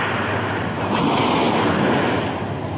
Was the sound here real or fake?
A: real